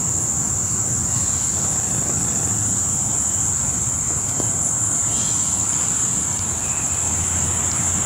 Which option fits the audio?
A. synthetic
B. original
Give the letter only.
B